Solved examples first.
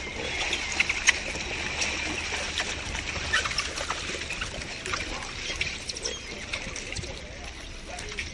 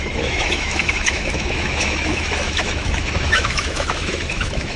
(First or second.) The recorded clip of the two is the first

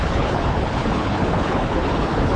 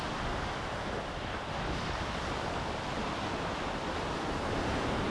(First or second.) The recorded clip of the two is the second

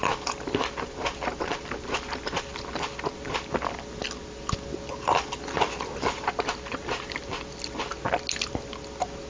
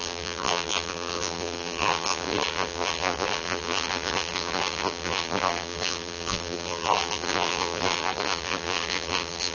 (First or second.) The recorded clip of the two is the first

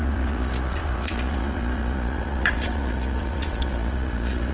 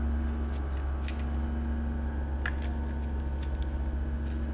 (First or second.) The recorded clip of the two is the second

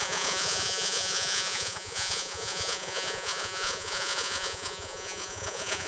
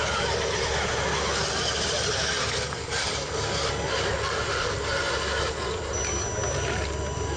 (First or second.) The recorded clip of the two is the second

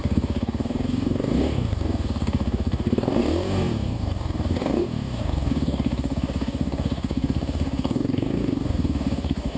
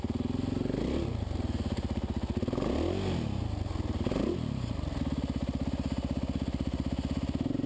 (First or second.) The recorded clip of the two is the second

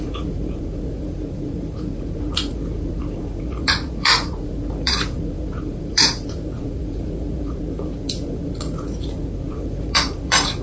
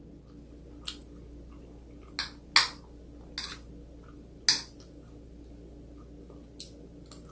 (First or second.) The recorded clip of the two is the second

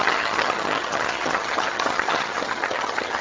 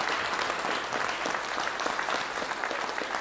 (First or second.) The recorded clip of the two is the second